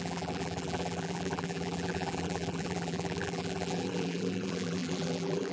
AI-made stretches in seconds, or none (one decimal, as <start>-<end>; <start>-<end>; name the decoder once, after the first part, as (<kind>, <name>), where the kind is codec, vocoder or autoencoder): 0.0-5.5 (vocoder, BigVGAN v2)